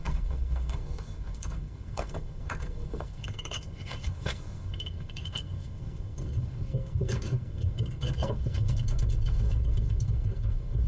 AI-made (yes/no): yes